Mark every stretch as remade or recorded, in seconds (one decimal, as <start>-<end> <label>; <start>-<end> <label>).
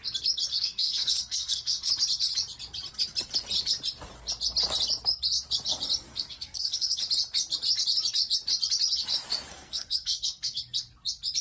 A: 0.0-0.5 recorded; 0.5-1.9 remade; 1.9-6.1 recorded; 6.1-7.0 remade; 7.0-9.5 recorded; 9.5-10.6 remade; 10.6-11.4 recorded